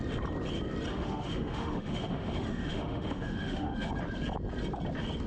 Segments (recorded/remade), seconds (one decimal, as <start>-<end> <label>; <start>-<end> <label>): 0.0-0.9 recorded; 0.9-3.9 remade; 3.9-5.3 recorded